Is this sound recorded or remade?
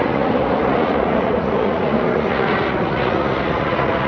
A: remade